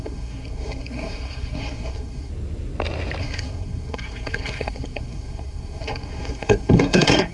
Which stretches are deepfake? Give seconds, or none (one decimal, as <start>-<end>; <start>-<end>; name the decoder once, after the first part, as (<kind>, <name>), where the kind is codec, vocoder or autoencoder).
0.0-2.3 (codec, SNAC); 3.2-7.3